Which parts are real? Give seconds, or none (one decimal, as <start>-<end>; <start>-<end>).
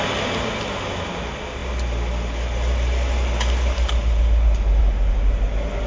0.0-5.9